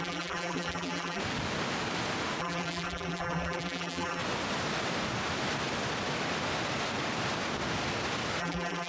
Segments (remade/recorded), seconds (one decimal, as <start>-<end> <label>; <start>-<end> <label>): 0.0-1.2 remade; 1.2-2.4 recorded; 2.4-4.2 remade; 4.2-8.4 recorded; 8.4-8.9 remade